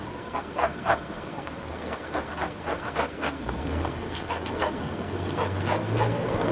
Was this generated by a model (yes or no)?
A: yes